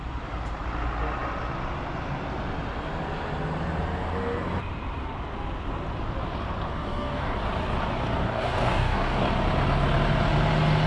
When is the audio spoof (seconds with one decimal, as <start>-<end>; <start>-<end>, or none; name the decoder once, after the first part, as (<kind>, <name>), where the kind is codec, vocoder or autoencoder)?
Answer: 6.7-7.4 (codec, DAC); 8.2-9.3